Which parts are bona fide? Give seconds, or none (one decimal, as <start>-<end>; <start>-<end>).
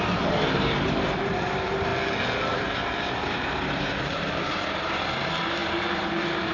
1.9-2.5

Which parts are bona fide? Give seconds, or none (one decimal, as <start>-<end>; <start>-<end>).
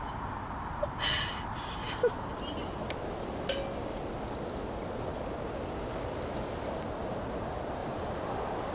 0.0-7.8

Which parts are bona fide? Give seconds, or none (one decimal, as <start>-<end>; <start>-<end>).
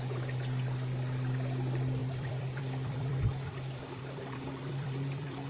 0.0-2.0